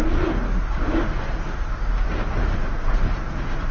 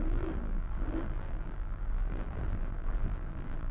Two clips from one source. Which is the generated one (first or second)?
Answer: second